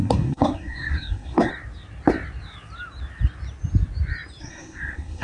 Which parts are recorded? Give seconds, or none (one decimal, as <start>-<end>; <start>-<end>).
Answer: 1.5-4.4